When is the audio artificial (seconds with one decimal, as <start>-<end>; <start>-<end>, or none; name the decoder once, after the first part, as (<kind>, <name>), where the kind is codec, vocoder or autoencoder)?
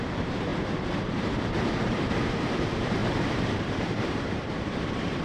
0.0-5.2 (vocoder, BigVGAN v2)